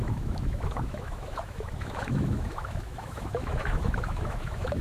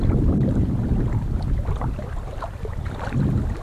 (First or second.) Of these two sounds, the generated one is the first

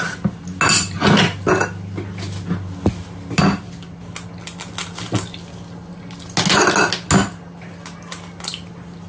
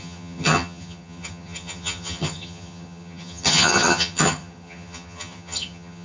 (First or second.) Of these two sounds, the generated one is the second